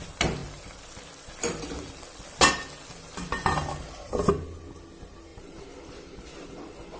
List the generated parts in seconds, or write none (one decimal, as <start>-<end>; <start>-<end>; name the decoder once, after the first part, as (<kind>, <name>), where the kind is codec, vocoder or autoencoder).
none